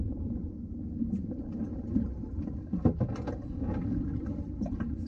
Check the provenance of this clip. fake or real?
real